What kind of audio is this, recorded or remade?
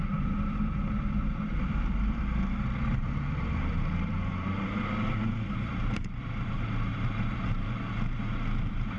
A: remade